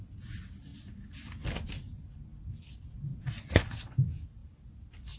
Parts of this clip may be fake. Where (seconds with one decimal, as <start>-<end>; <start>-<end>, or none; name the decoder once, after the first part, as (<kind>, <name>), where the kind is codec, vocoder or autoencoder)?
none

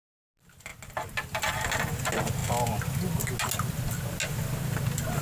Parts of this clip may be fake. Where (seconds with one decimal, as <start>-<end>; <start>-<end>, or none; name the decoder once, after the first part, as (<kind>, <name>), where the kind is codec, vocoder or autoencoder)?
none